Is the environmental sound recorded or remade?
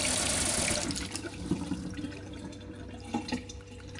recorded